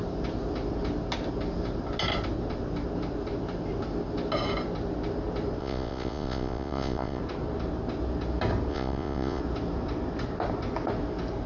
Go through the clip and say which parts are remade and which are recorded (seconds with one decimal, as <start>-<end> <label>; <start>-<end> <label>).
0.0-5.6 recorded; 5.6-7.2 remade; 7.2-8.7 recorded; 8.7-9.4 remade; 9.4-11.5 recorded